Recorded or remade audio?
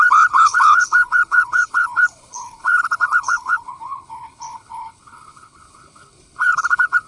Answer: remade